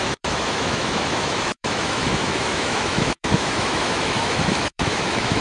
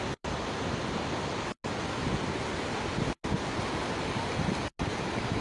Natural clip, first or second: second